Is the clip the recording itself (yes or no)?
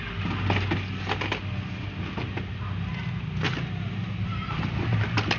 yes